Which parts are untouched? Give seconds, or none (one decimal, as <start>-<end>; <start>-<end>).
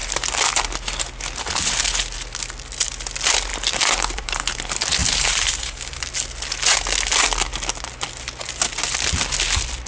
0.0-3.5; 4.6-5.0; 6.1-9.9